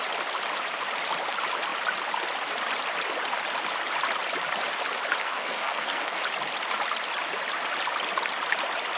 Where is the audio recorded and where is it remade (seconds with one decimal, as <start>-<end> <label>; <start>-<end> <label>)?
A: 0.0-5.2 recorded; 5.2-6.2 remade; 6.2-9.0 recorded